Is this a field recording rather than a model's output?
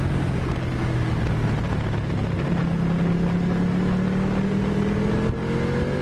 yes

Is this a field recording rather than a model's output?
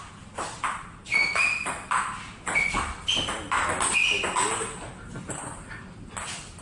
yes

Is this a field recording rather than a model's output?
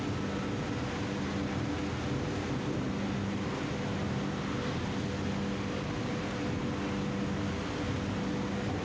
yes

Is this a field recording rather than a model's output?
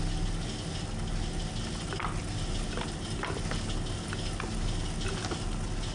yes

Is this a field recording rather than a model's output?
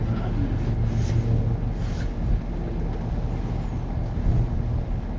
yes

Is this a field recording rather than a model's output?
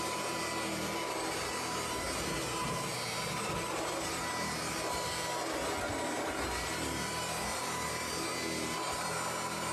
yes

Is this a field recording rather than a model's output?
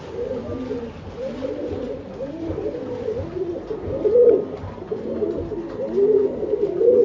yes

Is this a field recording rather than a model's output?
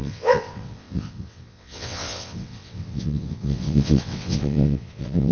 no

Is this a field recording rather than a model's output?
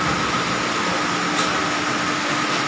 yes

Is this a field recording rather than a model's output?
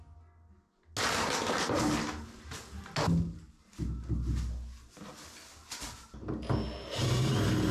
yes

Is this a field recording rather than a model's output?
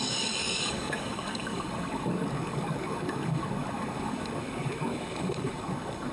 no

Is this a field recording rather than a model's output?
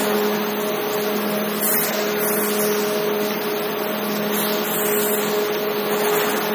yes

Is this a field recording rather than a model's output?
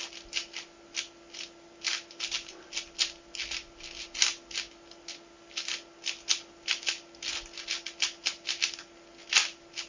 yes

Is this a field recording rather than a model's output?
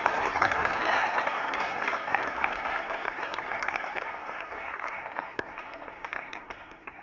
no